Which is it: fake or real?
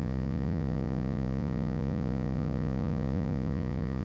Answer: fake